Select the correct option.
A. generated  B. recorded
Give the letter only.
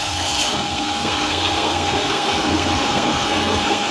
A